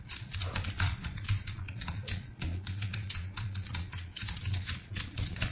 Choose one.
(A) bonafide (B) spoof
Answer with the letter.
B